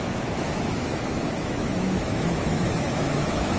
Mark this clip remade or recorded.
remade